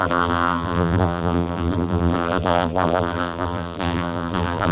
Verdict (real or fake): fake